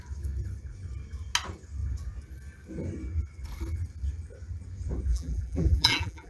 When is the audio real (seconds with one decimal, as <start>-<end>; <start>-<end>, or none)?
0.0-5.1